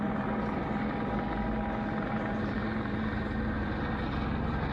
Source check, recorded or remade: recorded